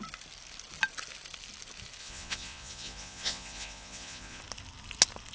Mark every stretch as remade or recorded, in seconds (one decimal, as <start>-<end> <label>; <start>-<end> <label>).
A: 0.0-2.0 recorded; 2.0-4.4 remade; 4.4-5.3 recorded